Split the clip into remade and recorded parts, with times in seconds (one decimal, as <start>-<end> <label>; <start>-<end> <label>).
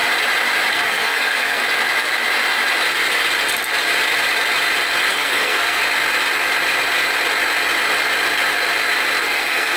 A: 0.0-0.7 recorded; 0.7-1.6 remade; 1.6-5.1 recorded; 5.1-5.8 remade; 5.8-9.2 recorded; 9.2-9.8 remade